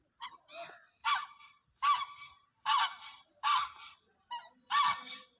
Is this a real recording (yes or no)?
no